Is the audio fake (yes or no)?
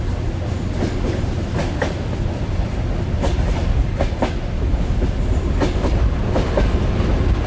no